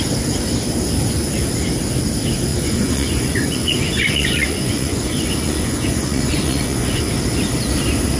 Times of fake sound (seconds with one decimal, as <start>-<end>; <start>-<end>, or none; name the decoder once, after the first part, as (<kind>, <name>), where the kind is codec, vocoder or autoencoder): 2.5-7.0 (vocoder, Vocos)